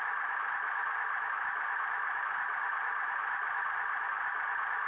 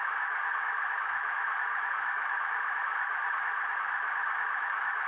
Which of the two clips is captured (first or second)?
first